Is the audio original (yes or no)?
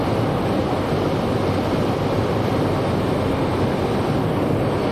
no